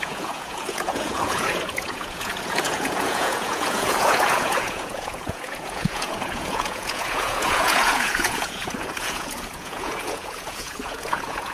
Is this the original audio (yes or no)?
no